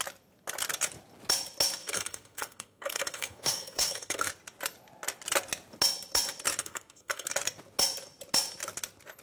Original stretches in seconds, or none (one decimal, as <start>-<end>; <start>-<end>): 0.0-1.8; 4.3-6.6; 7.3-9.2

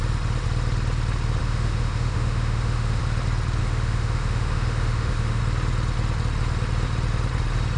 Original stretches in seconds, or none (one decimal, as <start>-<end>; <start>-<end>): 0.0-1.4; 3.0-3.6; 5.4-7.8

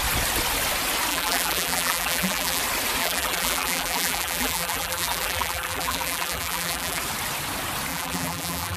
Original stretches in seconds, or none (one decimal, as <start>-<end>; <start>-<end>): 0.0-1.1; 2.6-3.0; 7.0-7.9

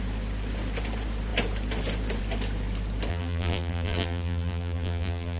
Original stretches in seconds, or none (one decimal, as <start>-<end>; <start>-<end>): 0.0-3.1

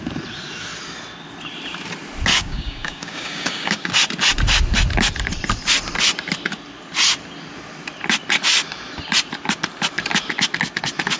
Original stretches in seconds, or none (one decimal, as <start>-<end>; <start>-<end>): 0.0-2.3; 3.9-11.2

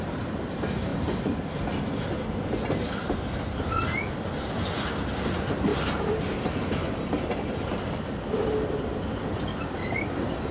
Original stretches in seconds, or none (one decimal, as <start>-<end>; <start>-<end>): 0.0-10.5

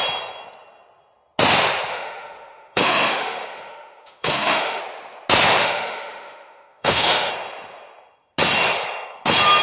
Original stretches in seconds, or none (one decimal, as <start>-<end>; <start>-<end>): 0.0-1.9; 4.8-5.6; 7.3-9.6